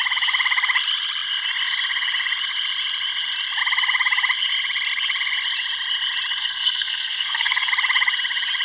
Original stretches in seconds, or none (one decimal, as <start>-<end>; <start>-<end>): 0.0-6.4; 7.7-8.6